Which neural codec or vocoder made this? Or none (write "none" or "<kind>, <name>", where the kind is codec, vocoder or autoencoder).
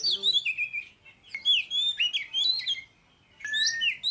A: none